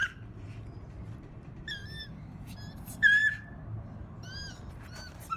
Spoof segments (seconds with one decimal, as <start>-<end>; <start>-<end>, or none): 0.0-3.2; 4.0-5.4